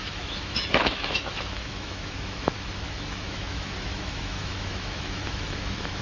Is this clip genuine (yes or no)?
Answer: no